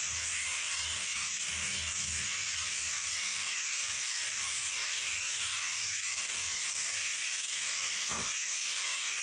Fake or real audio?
fake